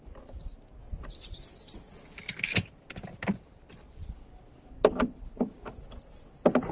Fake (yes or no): no